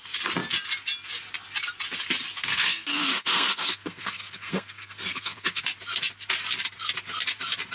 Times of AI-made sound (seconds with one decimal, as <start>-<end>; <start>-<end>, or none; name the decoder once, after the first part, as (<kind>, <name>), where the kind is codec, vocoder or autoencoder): 2.4-5.6 (codec, SNAC)